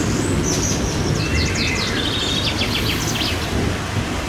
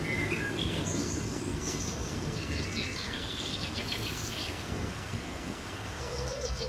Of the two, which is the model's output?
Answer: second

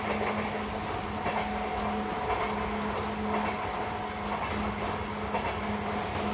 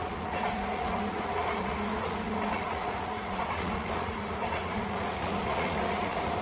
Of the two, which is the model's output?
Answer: second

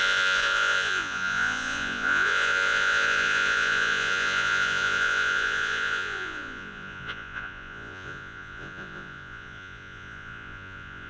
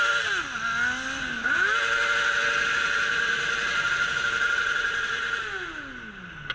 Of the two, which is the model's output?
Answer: first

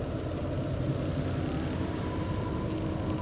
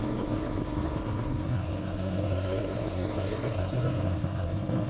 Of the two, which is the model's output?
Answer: second